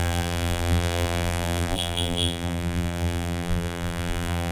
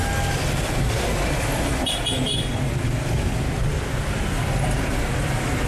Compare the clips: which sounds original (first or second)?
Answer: second